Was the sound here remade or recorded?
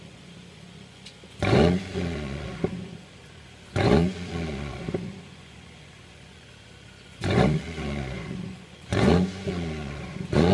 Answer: remade